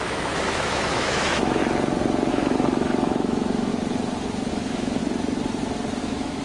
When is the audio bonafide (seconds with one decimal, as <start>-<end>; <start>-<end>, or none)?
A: 1.6-2.3; 3.7-4.5; 5.0-6.0